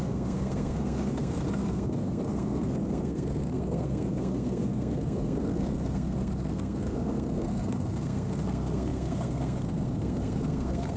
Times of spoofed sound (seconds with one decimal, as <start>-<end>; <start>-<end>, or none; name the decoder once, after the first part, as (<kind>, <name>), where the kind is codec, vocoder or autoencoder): 0.0-11.0 (codec, SNAC)